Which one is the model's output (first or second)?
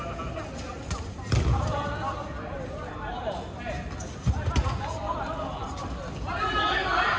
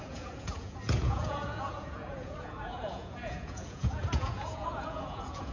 second